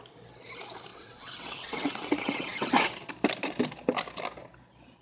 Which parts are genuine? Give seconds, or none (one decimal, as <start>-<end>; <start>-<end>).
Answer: 0.0-0.9; 2.9-5.0